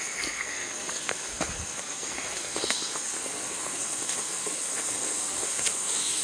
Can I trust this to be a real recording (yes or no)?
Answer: no